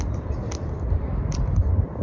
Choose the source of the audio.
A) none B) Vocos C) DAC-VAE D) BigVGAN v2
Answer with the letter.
A